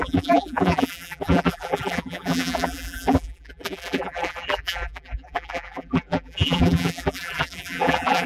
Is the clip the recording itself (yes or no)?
no